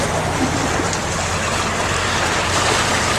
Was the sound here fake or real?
fake